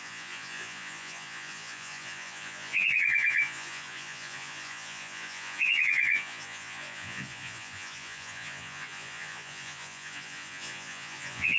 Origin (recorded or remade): remade